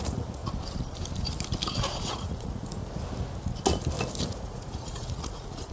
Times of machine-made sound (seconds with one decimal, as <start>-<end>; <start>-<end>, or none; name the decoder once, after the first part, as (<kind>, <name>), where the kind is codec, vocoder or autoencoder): 0.0-0.4 (vocoder, Vocos); 2.0-2.8; 4.3-5.7